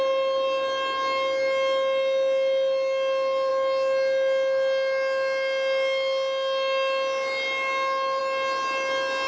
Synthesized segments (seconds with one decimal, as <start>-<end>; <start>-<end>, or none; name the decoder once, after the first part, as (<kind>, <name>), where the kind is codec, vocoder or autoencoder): none

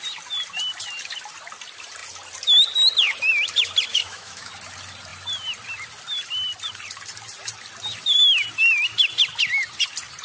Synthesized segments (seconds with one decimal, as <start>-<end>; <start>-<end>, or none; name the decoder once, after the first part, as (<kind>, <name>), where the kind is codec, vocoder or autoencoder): 3.9-4.5 (autoencoder, DAC-VAE)

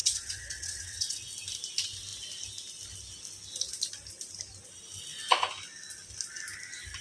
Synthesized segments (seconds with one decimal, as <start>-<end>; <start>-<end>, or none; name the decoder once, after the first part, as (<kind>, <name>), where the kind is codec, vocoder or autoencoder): 0.0-1.2 (vocoder, WaveNeXt)